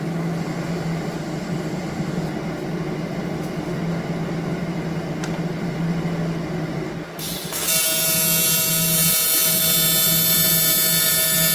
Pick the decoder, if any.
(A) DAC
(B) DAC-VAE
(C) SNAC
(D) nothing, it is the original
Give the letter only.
D